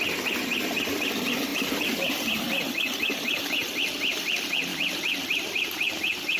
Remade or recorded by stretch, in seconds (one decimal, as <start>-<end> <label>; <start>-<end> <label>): 0.0-1.5 recorded; 1.5-2.0 remade; 2.0-6.4 recorded